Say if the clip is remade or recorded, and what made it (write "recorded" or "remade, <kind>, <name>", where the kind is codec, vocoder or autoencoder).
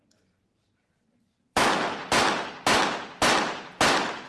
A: remade, vocoder, BigVGAN v2